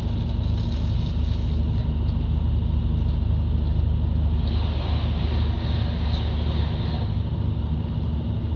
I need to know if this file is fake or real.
real